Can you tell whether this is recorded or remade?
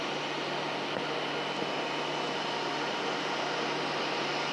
recorded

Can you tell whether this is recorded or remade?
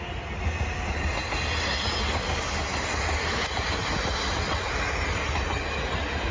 recorded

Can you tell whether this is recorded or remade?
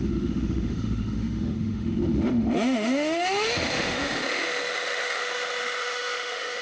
remade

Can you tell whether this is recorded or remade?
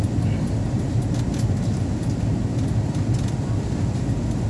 recorded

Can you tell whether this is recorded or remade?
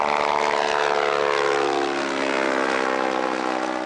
recorded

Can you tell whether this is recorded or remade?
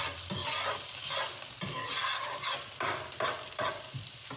recorded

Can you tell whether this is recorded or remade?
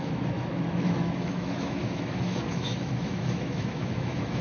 remade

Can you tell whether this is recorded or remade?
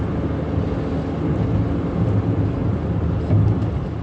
recorded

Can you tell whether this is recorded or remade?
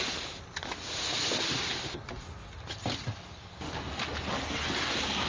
recorded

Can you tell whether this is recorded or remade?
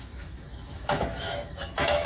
remade